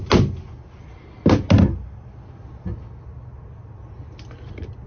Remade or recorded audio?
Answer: recorded